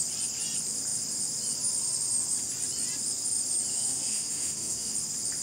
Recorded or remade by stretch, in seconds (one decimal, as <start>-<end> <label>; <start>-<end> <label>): 0.0-3.7 recorded; 3.7-4.9 remade; 4.9-5.4 recorded